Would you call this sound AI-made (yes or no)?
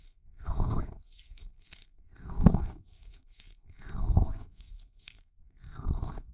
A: yes